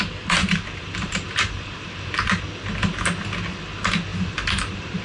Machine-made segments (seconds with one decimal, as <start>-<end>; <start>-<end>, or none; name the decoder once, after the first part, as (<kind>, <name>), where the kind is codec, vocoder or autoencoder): 0.4-2.4 (vocoder, BigVGAN v2); 4.1-5.0